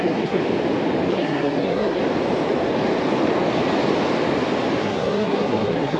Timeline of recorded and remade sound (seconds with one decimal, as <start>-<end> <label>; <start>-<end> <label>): 0.0-0.4 remade; 0.4-1.1 recorded; 1.1-2.0 remade; 2.0-4.8 recorded; 4.8-6.0 remade